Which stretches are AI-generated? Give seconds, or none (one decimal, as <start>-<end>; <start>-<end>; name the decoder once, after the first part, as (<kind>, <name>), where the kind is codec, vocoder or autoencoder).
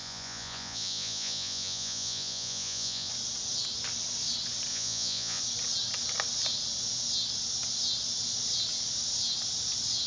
0.0-3.1 (vocoder, Vocos); 4.7-5.4